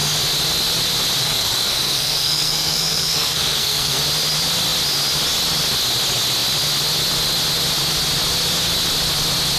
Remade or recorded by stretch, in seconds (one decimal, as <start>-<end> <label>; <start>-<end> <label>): 0.0-1.2 recorded; 1.2-4.0 remade; 4.0-9.6 recorded